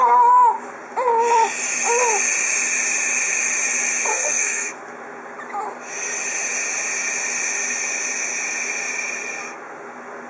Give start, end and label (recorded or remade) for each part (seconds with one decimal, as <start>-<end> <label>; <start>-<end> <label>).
0.0-4.1 recorded; 4.1-4.7 remade; 4.7-10.3 recorded